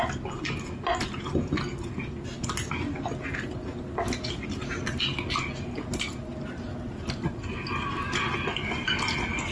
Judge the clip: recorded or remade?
recorded